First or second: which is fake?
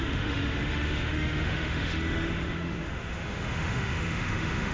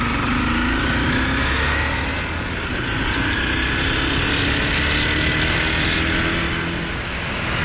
first